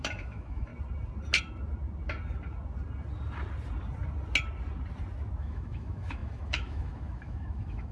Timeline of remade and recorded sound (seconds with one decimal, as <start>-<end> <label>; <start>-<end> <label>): 0.0-0.7 remade; 0.7-5.4 recorded; 5.4-7.9 remade